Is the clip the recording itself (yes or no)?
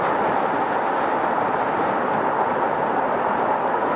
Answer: yes